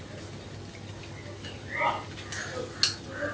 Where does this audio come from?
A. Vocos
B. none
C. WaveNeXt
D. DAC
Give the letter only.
B